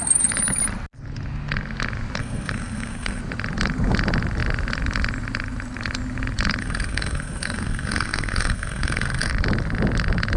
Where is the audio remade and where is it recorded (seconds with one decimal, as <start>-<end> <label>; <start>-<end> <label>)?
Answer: 0.0-2.2 recorded; 2.2-3.2 remade; 3.2-6.6 recorded; 6.6-9.3 remade; 9.3-10.4 recorded